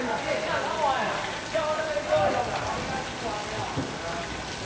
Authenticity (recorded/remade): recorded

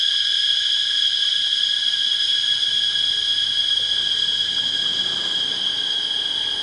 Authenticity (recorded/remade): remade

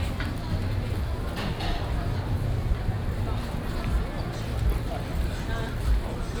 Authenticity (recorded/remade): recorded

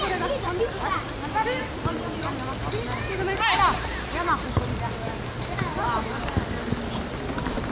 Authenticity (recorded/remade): recorded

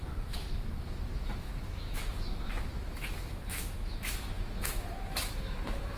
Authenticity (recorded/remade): remade